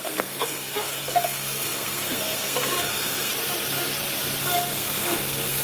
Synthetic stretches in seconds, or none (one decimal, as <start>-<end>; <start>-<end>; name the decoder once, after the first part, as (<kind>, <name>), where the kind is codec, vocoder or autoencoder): 0.0-3.3 (codec, SNAC); 4.4-5.6